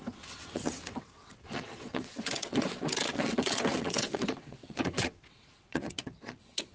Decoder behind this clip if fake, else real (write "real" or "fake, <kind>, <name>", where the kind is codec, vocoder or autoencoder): fake, vocoder, WaveNeXt